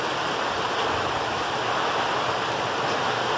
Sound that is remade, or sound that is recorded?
recorded